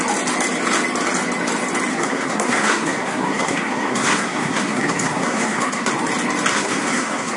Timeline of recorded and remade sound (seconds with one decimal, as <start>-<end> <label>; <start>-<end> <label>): 0.0-1.9 recorded; 1.9-5.9 remade; 5.9-6.5 recorded; 6.5-7.4 remade